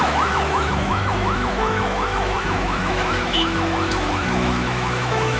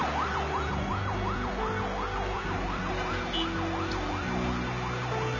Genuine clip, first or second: second